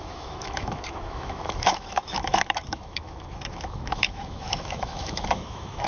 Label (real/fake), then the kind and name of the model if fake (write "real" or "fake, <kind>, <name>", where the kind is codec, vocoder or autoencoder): fake, autoencoder, DAC-VAE